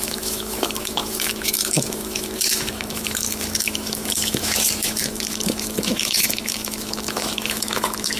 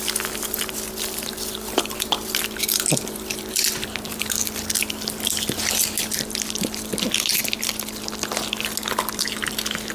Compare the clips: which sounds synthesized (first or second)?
first